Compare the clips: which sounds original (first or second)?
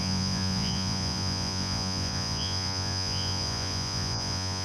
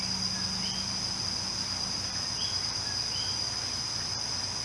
second